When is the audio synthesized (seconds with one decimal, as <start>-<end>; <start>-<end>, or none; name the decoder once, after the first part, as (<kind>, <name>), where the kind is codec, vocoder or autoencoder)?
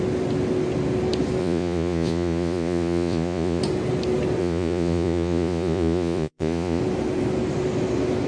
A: 1.4-3.6 (vocoder, Vocos); 4.4-6.8